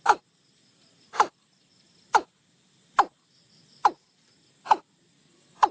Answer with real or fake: fake